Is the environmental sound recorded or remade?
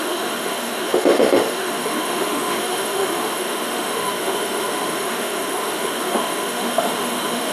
remade